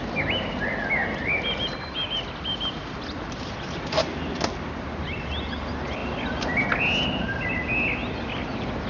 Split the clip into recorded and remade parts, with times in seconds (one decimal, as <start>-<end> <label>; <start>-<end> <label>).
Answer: 0.0-8.9 recorded